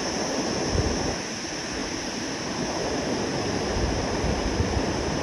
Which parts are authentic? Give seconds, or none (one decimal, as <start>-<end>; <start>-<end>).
0.0-1.8; 2.5-3.3; 4.4-5.2